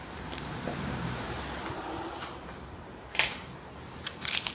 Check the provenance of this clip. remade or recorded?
remade